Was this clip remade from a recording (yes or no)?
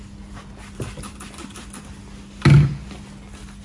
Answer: no